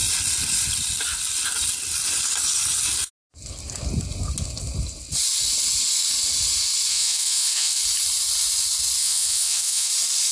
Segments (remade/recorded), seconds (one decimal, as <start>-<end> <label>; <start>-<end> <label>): 0.0-6.9 recorded; 6.9-7.8 remade; 7.8-9.0 recorded; 9.0-9.9 remade; 9.9-10.3 recorded

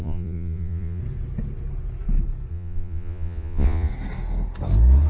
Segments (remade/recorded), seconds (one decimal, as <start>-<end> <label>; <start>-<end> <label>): 0.0-1.0 remade; 1.0-2.5 recorded; 2.5-3.9 remade; 3.9-5.1 recorded

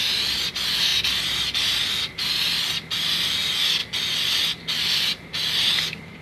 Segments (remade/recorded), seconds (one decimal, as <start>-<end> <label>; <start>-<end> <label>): 0.0-6.2 recorded

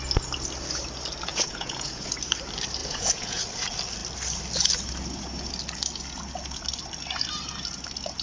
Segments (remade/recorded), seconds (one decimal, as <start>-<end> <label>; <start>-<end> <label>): 0.0-1.3 recorded; 1.3-2.1 remade; 2.1-2.8 recorded; 2.8-3.4 remade; 3.4-8.2 recorded

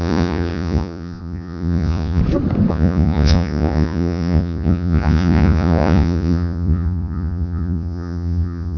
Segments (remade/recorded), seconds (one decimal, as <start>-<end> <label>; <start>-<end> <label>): 0.0-2.2 remade; 2.2-2.7 recorded; 2.7-8.8 remade

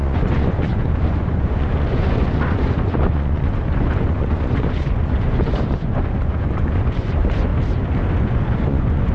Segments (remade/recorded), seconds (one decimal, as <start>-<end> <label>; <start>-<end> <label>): 0.0-7.5 remade; 7.5-8.2 recorded; 8.2-9.1 remade